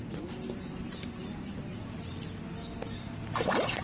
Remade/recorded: recorded